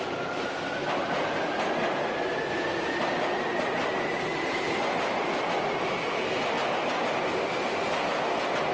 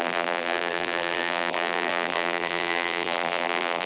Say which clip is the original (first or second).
first